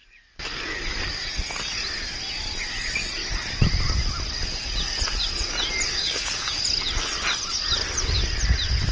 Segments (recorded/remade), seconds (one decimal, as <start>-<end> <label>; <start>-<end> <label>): 0.0-5.9 recorded; 5.9-6.6 remade; 6.6-8.9 recorded